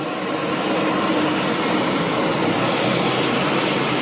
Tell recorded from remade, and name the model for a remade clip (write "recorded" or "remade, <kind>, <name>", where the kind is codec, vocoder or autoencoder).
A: remade, vocoder, BigVGAN v2